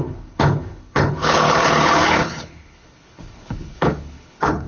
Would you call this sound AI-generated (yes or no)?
yes